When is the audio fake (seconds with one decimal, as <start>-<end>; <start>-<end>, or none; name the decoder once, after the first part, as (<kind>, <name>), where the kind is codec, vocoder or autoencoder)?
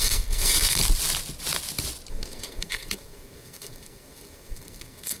0.0-0.8 (codec, SNAC); 2.1-5.2